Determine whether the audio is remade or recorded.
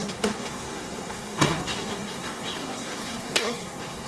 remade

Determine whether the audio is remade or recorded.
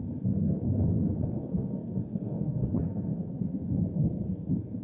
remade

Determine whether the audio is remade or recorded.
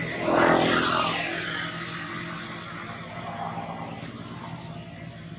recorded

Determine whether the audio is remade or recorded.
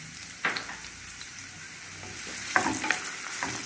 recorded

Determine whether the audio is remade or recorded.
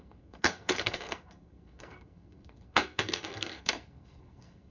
remade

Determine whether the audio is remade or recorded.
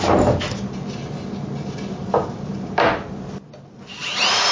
recorded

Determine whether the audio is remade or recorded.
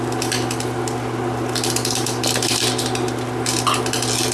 recorded